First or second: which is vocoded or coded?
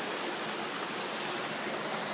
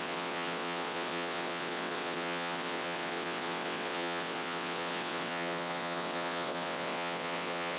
second